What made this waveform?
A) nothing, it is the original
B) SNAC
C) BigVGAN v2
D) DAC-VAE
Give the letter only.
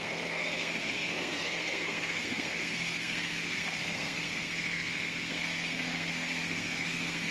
B